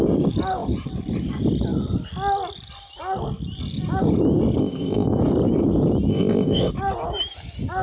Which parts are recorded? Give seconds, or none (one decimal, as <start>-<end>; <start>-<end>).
0.0-4.6; 5.2-6.1; 6.7-7.8